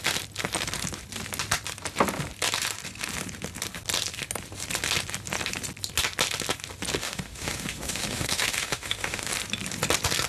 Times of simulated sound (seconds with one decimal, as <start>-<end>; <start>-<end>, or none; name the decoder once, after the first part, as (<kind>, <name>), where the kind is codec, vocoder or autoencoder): 7.0-9.3 (autoencoder, DAC-VAE)